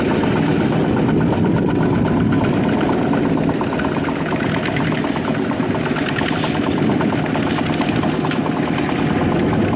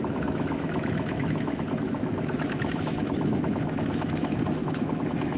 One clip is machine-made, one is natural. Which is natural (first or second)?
first